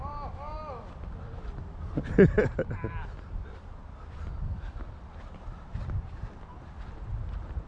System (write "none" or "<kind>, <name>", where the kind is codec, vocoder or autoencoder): none